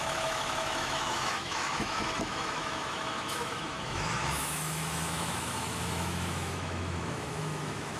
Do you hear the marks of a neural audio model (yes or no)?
yes